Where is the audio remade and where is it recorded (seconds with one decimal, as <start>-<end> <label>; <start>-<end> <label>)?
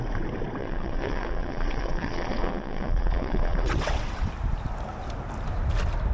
0.0-0.6 recorded; 0.6-4.3 remade; 4.3-6.1 recorded